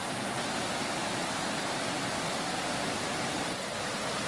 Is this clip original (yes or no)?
yes